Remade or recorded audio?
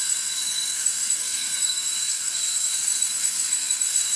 remade